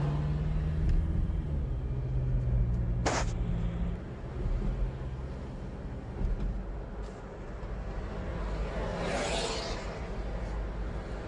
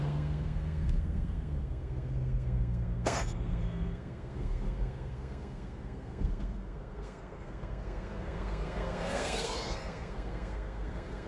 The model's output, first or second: second